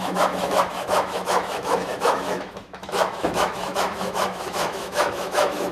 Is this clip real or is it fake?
fake